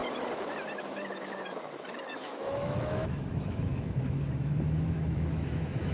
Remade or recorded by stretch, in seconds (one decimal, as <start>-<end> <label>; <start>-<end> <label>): 0.0-0.8 recorded; 0.8-5.9 remade